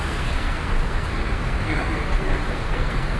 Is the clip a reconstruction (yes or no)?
yes